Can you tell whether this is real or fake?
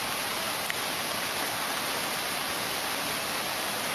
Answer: real